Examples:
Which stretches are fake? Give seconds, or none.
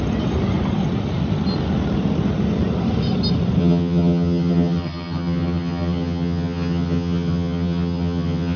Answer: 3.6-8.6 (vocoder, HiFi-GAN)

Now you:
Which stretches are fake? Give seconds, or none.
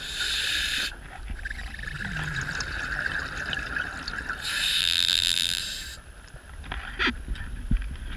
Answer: 4.8-5.6 (vocoder, BigVGAN v2)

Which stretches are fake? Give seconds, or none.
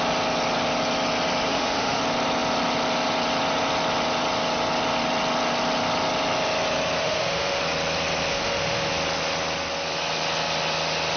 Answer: 1.5-2.0 (autoencoder, DAC-VAE); 7.0-7.6; 8.3-8.9